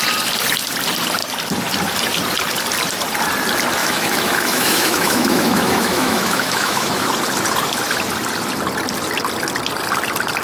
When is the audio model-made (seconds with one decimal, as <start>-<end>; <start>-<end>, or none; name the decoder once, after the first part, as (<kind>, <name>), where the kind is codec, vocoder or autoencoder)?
3.8-7.1 (autoencoder, DAC-VAE)